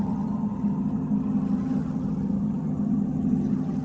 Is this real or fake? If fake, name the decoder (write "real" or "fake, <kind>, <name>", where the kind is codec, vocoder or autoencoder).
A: fake, vocoder, HiFi-GAN